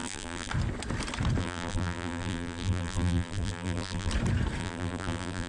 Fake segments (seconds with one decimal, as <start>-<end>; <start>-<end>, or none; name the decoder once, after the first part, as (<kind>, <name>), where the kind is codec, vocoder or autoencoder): 0.0-0.5 (vocoder, BigVGAN v2); 1.4-4.1; 4.6-5.5